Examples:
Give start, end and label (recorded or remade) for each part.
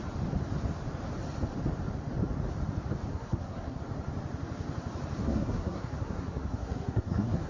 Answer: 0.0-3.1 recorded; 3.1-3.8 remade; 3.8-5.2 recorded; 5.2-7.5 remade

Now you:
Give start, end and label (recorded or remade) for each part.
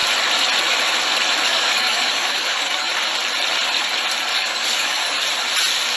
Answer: 0.0-1.5 recorded; 1.5-2.9 remade; 2.9-4.3 recorded; 4.3-5.2 remade; 5.2-6.0 recorded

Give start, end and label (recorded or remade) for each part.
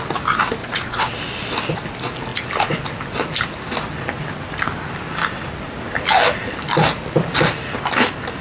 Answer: 0.0-0.6 recorded; 0.6-1.1 remade; 1.1-8.4 recorded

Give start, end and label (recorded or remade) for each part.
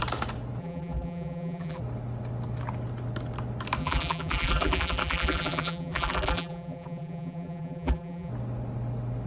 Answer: 0.0-0.6 recorded; 0.6-1.8 remade; 1.8-3.8 recorded; 3.8-8.3 remade; 8.3-9.3 recorded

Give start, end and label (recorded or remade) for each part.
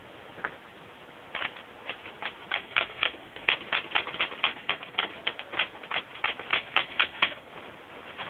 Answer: 0.0-2.6 recorded; 2.6-3.5 remade; 3.5-4.5 recorded; 4.5-5.1 remade; 5.1-6.5 recorded; 6.5-7.5 remade; 7.5-8.3 recorded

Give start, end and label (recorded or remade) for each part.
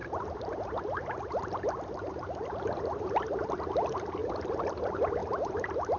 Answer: 0.0-3.6 remade; 3.6-4.2 recorded; 4.2-4.7 remade; 4.7-5.2 recorded; 5.2-6.0 remade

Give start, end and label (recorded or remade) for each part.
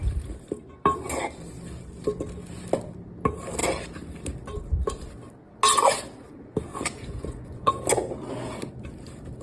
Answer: 0.0-6.7 recorded; 6.7-7.7 remade; 7.7-9.4 recorded